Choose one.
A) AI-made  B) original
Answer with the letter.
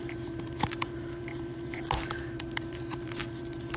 A